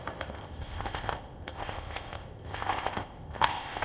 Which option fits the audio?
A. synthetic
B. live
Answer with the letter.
A